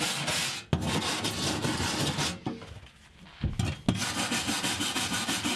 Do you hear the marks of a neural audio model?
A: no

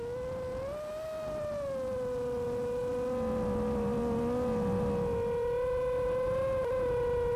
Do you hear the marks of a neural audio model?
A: no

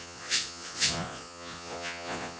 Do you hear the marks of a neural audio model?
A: yes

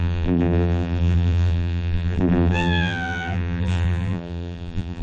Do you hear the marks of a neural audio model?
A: yes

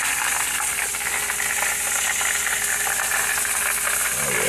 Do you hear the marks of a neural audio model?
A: no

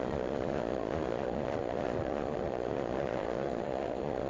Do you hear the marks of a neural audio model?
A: yes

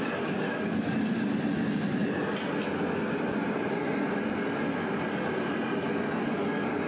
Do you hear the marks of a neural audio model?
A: no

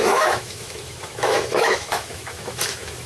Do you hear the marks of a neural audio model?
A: yes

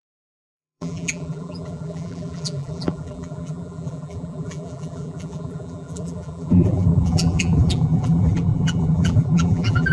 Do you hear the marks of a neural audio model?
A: yes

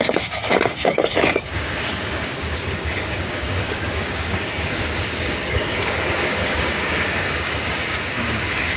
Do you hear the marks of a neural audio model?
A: yes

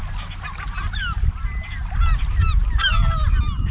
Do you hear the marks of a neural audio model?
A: no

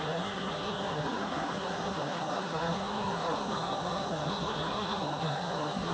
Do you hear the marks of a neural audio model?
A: yes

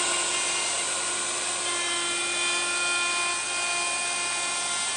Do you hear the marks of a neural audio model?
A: no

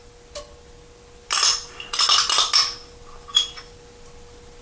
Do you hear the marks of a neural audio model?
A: no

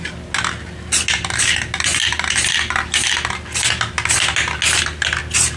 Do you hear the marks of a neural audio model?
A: no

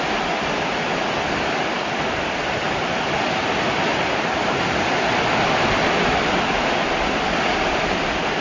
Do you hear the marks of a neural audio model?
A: no